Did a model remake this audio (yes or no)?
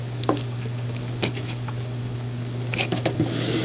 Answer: yes